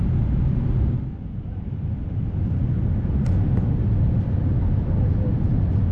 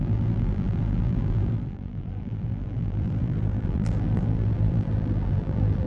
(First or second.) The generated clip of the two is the second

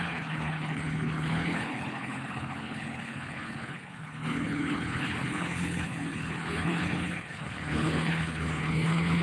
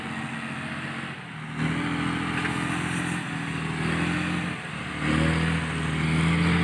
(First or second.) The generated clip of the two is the first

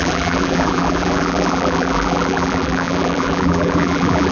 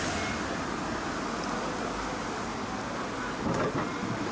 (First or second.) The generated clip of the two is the first